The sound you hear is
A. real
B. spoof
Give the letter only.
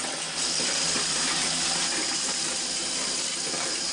B